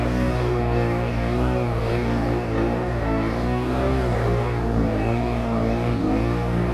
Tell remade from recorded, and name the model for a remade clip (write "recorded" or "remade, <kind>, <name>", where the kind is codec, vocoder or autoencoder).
remade, codec, DAC